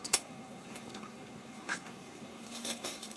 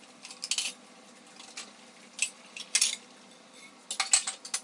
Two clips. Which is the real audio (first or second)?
second